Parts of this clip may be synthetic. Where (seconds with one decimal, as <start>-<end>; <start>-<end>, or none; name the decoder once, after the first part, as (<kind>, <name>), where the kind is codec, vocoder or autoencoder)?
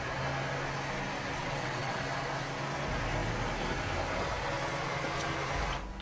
1.4-2.0 (vocoder, WaveNeXt)